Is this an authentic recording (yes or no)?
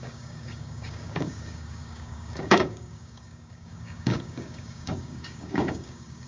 no